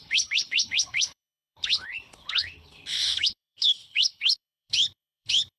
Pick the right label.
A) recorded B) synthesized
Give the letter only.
B